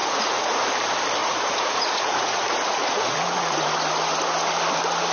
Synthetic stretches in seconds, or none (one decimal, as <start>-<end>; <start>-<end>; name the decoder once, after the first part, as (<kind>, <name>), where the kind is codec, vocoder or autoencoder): 0.0-0.6 (vocoder, Vocos); 1.2-3.6